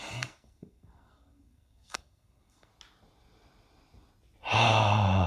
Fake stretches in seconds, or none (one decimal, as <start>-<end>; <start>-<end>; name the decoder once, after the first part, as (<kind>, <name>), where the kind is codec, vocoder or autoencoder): 0.0-2.7 (codec, SNAC)